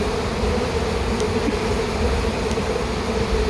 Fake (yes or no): no